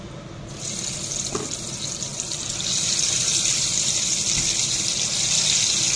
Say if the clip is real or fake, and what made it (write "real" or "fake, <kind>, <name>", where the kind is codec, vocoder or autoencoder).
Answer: real